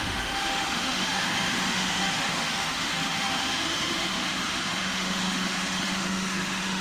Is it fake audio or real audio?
fake